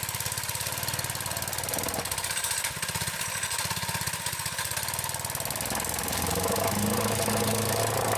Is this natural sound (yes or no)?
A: yes